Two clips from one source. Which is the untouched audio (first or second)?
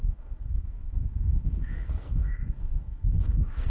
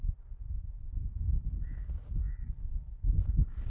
second